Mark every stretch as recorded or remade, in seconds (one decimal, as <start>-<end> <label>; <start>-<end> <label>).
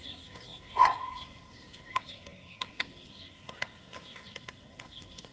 0.0-5.3 remade